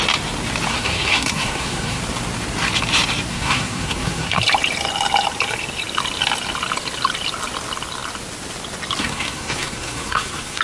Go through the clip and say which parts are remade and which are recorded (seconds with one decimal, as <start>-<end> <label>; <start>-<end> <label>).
0.0-0.7 recorded; 0.7-2.0 remade; 2.0-3.3 recorded; 3.3-4.4 remade; 4.4-9.0 recorded; 9.0-10.6 remade